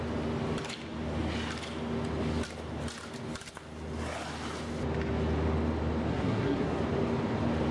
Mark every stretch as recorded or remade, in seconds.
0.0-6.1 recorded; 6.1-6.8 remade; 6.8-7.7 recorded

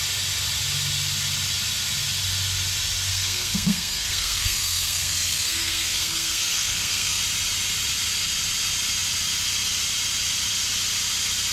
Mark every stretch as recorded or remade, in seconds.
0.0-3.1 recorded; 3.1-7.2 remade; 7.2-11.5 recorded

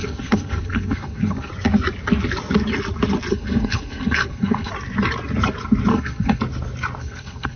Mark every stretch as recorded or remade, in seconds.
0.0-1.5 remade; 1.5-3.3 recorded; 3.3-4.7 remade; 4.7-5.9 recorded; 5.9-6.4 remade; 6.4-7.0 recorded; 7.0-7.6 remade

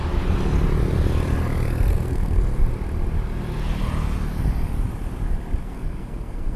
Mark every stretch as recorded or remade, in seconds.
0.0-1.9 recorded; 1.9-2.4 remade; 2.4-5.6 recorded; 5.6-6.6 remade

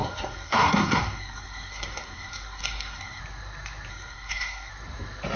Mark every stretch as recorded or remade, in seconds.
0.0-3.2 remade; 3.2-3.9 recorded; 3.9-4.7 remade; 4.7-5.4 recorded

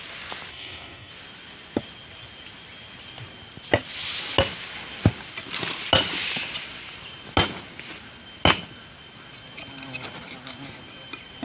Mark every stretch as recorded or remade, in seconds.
0.0-0.5 recorded; 0.5-1.1 remade; 1.1-11.4 recorded

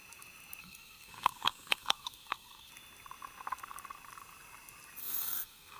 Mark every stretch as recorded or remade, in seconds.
0.0-0.6 recorded; 0.6-2.7 remade; 2.7-5.0 recorded; 5.0-5.8 remade

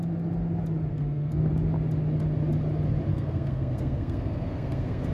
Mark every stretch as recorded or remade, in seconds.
0.0-0.9 recorded; 0.9-1.5 remade; 1.5-3.1 recorded; 3.1-5.1 remade